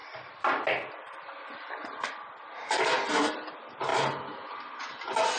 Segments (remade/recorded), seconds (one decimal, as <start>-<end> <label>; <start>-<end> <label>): 0.0-5.4 recorded